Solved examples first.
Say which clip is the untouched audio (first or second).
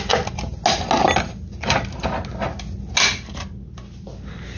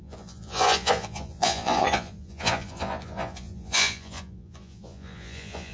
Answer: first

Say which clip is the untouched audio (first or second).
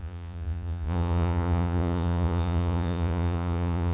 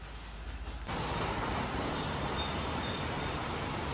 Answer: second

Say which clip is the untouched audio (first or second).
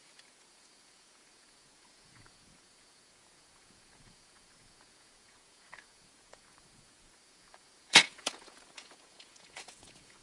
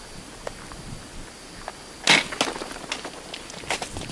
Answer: second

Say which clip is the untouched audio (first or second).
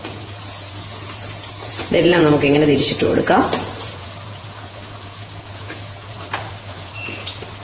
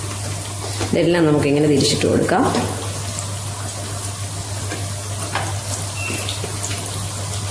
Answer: second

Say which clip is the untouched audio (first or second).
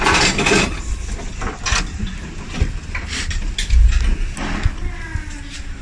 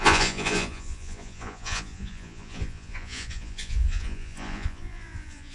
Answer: first